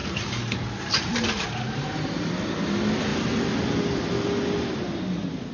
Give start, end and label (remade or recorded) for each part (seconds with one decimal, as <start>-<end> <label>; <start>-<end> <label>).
0.0-2.3 remade; 2.3-5.5 recorded